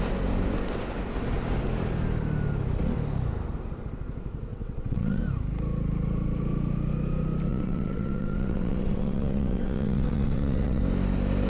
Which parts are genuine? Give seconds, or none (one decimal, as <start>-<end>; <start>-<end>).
0.0-4.5; 5.2-7.5; 10.8-11.5

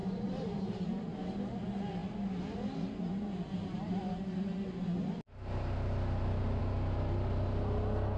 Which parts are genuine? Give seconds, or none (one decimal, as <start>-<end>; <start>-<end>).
0.8-8.2

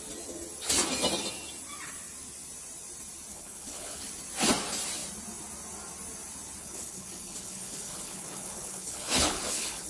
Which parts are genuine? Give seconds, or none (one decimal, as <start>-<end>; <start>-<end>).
0.0-3.3; 4.1-6.6

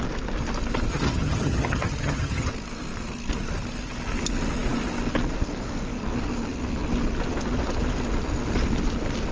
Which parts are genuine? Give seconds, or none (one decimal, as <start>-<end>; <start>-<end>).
0.0-0.9; 2.5-9.3

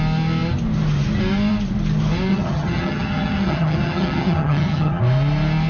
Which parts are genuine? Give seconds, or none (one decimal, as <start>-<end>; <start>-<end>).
0.0-2.3; 5.0-5.7

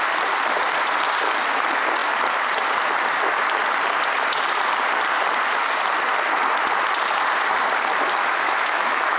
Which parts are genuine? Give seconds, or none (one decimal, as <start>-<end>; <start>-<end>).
0.0-8.2

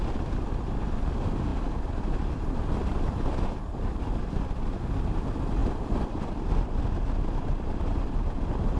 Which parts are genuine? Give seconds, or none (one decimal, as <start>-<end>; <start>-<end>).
0.0-1.5; 2.4-2.9; 4.2-8.8

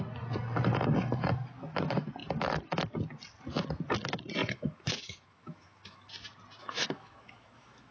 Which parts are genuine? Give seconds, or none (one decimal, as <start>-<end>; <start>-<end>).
0.0-4.4; 6.1-6.6